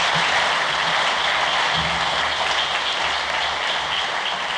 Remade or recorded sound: recorded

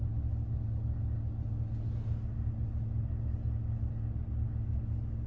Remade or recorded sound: recorded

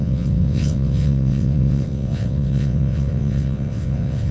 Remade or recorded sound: remade